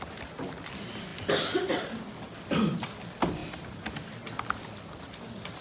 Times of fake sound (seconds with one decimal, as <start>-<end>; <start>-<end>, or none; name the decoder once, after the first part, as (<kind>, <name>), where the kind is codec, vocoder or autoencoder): none